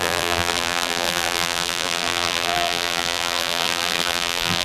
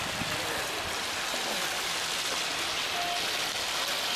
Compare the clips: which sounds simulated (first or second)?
first